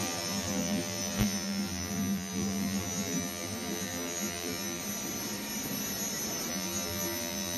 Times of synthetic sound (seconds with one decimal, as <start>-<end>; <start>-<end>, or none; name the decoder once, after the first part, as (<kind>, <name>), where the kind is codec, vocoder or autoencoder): 0.0-4.8 (vocoder, BigVGAN v2); 6.5-7.6